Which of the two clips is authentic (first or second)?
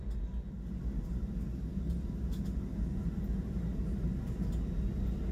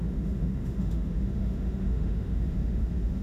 first